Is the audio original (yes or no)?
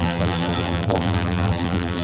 no